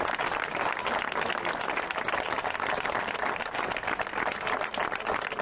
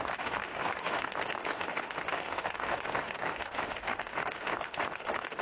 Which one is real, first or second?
first